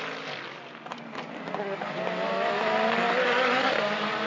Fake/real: real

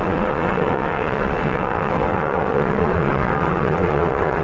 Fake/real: fake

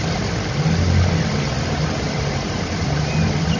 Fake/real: real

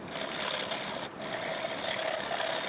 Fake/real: real